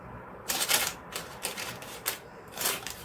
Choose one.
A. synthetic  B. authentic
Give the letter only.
A